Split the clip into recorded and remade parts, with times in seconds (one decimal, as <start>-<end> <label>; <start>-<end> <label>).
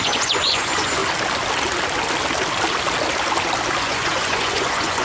0.0-1.0 remade; 1.0-3.8 recorded; 3.8-5.0 remade